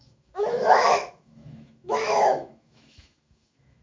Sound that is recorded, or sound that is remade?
remade